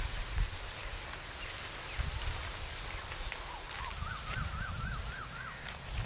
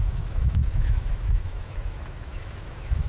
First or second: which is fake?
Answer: second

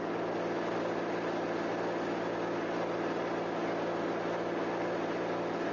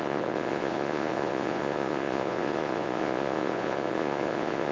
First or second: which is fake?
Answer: second